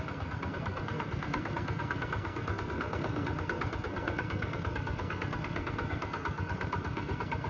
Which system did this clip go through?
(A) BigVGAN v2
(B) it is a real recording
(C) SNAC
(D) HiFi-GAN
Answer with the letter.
C